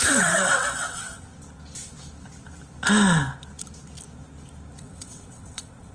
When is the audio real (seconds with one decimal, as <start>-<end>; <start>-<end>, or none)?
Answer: 1.3-4.8